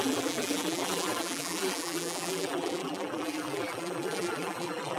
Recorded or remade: remade